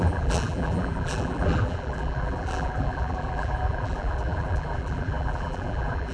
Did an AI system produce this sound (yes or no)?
yes